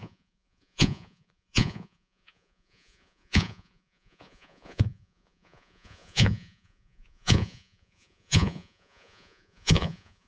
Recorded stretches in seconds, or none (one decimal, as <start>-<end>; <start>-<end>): none